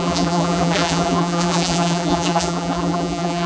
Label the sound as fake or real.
fake